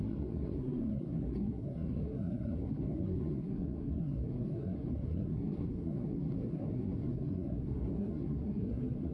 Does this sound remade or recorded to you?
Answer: remade